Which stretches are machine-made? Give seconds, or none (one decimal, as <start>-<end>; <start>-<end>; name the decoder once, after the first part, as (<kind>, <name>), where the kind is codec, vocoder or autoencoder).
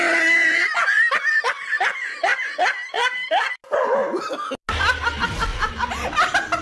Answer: none